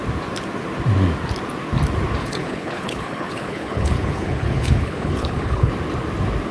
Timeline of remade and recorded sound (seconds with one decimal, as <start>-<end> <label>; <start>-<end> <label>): 0.0-2.2 recorded; 2.2-5.7 remade; 5.7-6.5 recorded